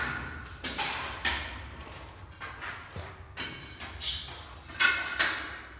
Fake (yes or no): no